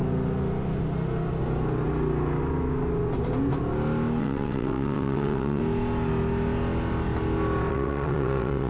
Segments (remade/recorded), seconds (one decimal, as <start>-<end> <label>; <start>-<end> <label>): 0.0-4.2 recorded; 4.2-5.6 remade; 5.6-7.7 recorded; 7.7-8.7 remade